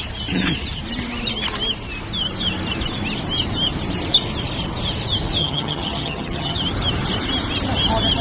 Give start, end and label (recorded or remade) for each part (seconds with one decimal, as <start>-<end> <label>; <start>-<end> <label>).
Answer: 0.0-5.4 recorded; 5.4-6.6 remade; 6.6-8.2 recorded

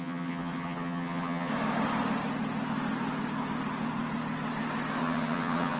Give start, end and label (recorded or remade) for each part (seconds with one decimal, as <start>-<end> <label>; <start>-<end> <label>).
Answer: 0.0-1.5 remade; 1.5-5.0 recorded; 5.0-5.8 remade

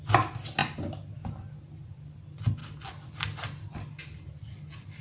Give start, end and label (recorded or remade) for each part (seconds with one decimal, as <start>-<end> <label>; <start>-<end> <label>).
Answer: 0.0-5.0 recorded

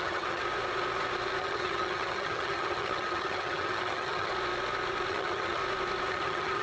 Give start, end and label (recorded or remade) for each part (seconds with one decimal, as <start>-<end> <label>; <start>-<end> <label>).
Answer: 0.0-0.4 remade; 0.4-1.4 recorded; 1.4-4.3 remade; 4.3-5.1 recorded; 5.1-5.6 remade; 5.6-6.1 recorded; 6.1-6.6 remade

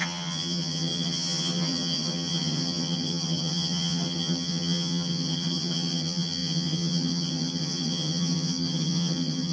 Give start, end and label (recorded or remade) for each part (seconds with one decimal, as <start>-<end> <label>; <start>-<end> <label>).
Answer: 0.0-9.5 remade

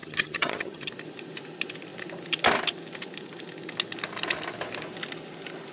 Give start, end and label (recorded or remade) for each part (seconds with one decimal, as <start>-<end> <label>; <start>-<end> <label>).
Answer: 0.0-0.9 remade; 0.9-5.7 recorded

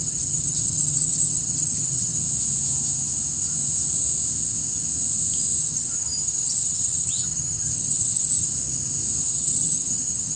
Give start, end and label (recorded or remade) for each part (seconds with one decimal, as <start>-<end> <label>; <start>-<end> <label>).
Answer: 0.0-2.2 remade; 2.2-5.6 recorded; 5.6-8.5 remade; 8.5-9.2 recorded; 9.2-10.4 remade

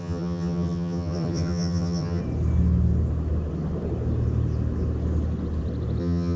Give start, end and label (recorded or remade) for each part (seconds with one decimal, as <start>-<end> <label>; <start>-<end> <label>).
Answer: 0.0-2.2 remade; 2.2-6.0 recorded; 6.0-6.4 remade